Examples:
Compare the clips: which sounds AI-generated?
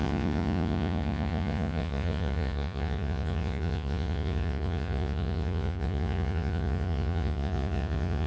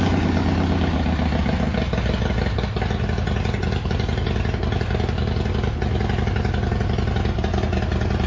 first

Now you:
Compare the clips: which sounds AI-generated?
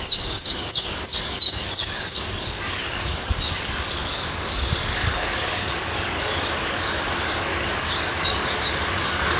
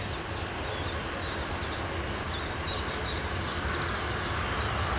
first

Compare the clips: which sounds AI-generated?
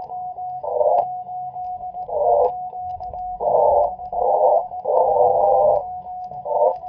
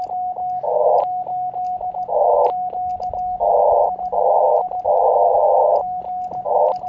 first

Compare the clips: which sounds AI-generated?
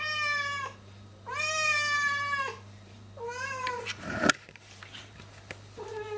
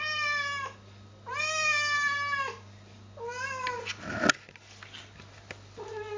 first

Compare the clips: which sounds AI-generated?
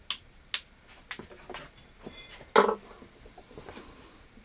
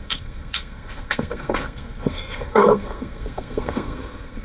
second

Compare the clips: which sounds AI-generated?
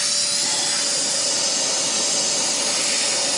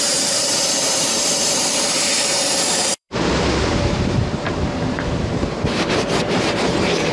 second